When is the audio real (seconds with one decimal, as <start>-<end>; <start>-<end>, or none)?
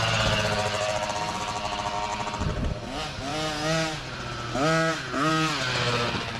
0.0-2.1; 2.7-6.4